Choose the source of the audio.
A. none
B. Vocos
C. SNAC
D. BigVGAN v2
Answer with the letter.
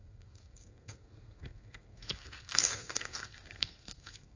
C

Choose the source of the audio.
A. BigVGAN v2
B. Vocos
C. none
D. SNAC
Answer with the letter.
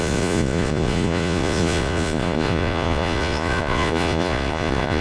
B